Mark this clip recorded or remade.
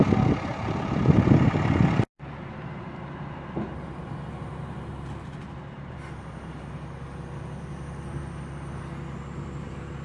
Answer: recorded